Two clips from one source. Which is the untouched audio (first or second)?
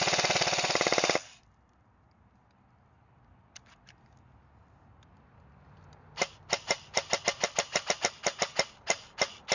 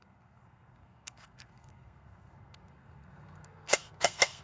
first